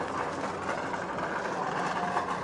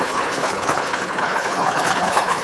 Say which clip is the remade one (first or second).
second